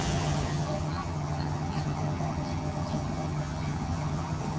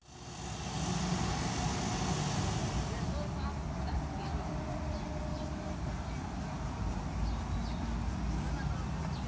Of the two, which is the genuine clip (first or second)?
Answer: second